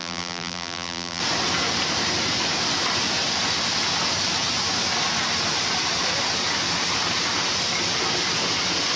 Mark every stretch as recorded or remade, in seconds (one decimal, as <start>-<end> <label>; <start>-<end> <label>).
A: 0.0-1.2 remade; 1.2-9.0 recorded